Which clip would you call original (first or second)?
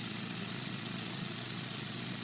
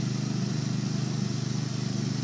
second